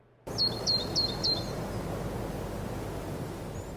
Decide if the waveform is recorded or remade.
recorded